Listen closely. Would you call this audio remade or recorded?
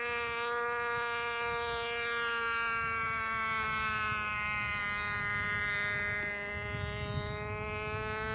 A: recorded